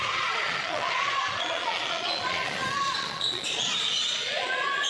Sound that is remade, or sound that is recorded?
remade